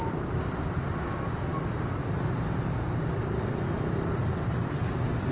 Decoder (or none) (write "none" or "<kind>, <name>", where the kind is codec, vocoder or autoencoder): none